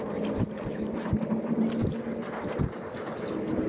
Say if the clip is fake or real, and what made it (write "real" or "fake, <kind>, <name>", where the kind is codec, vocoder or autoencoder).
real